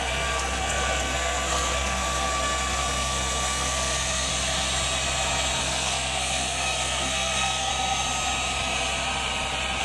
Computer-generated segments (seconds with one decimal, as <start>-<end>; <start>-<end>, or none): 0.0-4.3; 5.6-7.7